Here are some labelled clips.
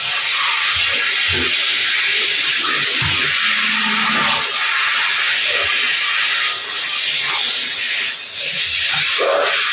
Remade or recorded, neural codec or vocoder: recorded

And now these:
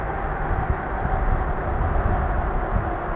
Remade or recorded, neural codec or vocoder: recorded